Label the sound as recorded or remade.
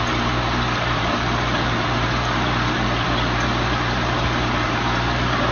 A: remade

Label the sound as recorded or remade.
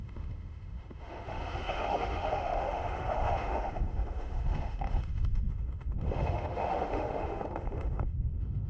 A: remade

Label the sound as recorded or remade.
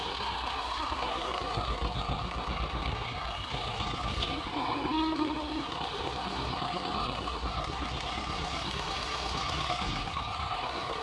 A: remade